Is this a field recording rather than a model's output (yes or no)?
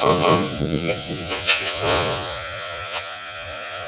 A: no